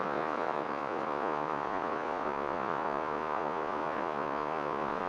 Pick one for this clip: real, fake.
fake